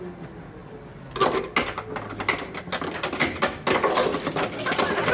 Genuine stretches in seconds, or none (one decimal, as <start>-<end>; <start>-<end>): 0.0-5.1